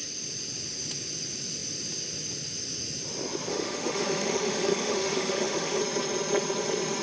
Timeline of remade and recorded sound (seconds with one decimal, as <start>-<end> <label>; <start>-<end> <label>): 0.0-3.5 recorded; 3.5-5.8 remade; 5.8-7.0 recorded